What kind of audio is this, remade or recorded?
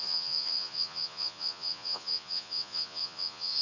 remade